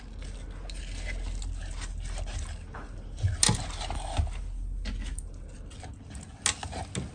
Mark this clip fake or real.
real